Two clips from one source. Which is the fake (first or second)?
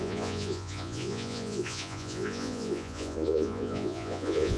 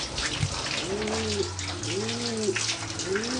first